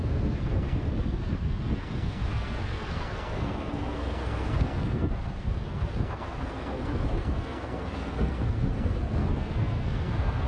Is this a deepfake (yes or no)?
yes